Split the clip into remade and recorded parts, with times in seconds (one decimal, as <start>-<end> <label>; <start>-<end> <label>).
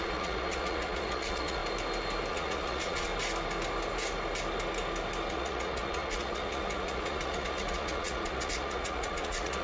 0.0-1.6 remade; 1.6-2.3 recorded; 2.3-3.1 remade; 3.1-5.3 recorded; 5.3-9.6 remade